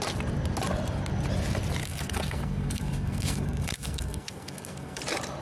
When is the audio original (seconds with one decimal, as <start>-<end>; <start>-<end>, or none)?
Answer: 0.0-1.8; 5.0-5.4